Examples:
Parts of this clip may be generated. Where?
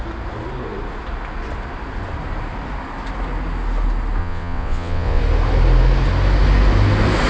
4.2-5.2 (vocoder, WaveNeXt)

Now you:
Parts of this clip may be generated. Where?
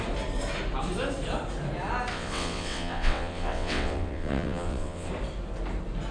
2.1-5.1 (vocoder, WaveNeXt)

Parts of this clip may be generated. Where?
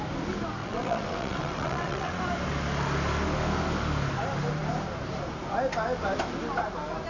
0.6-2.2 (vocoder, WaveNeXt)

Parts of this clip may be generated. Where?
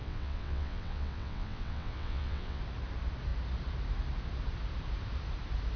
0.0-2.6 (vocoder, WaveNeXt)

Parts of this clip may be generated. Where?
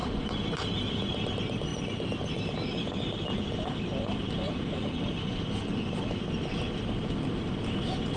none